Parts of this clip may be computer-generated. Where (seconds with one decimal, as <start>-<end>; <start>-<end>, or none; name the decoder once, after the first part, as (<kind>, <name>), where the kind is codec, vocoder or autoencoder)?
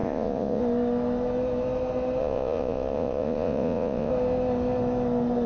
0.0-0.6 (vocoder, Vocos); 2.2-4.1